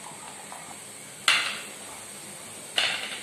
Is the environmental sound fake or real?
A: real